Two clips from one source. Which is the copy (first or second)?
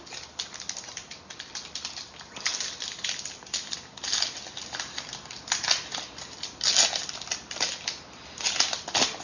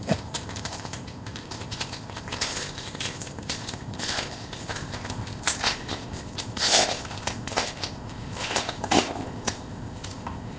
second